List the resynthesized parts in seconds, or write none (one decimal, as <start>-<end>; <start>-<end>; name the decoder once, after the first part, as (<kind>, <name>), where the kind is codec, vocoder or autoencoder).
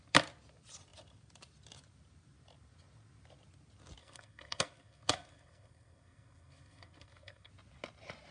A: 4.0-7.5 (codec, SNAC)